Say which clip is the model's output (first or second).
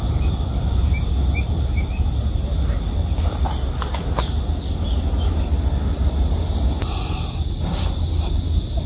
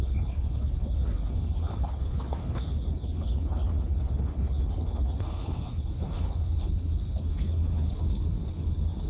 second